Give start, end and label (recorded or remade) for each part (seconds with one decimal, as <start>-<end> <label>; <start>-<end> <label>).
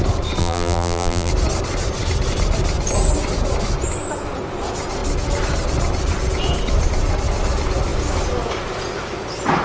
0.0-0.4 recorded; 0.4-1.3 remade; 1.3-9.6 recorded